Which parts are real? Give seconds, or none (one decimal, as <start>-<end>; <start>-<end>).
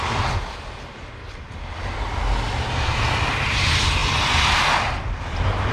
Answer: 0.0-5.7